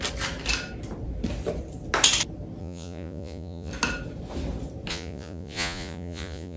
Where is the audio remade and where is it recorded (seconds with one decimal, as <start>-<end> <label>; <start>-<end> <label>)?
0.0-2.6 recorded; 2.6-3.7 remade; 3.7-4.9 recorded; 4.9-6.6 remade

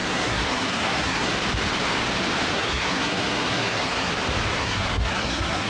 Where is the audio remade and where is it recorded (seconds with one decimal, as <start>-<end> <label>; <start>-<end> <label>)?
0.0-1.3 remade; 1.3-2.5 recorded; 2.5-4.1 remade; 4.1-4.5 recorded; 4.5-5.7 remade

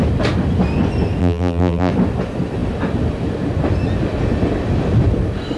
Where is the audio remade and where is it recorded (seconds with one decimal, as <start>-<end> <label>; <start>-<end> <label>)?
0.0-1.2 recorded; 1.2-1.9 remade; 1.9-5.6 recorded

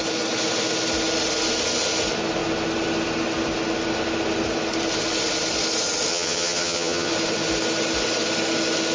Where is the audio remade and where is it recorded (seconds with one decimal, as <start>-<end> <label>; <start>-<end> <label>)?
0.0-6.1 recorded; 6.1-7.1 remade; 7.1-8.9 recorded

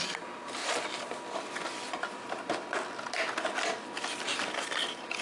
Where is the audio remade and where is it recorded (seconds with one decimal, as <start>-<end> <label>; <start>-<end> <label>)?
0.0-5.2 recorded

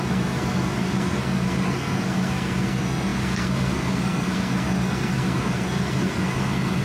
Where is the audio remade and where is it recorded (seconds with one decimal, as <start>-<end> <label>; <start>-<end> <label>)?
0.0-6.8 remade

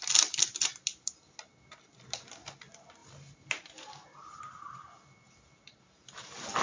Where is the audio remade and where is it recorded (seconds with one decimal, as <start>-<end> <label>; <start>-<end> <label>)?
0.0-6.6 recorded